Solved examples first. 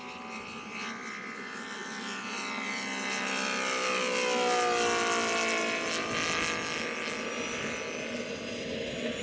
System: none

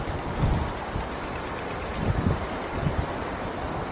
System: none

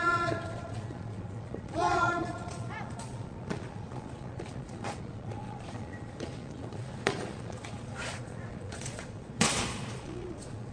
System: vocoder, Vocos